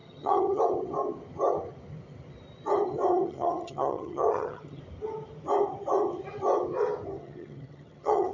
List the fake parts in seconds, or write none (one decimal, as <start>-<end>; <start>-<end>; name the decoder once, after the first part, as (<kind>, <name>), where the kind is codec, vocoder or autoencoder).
0.0-0.6 (vocoder, HiFi-GAN); 3.1-4.8; 7.2-8.3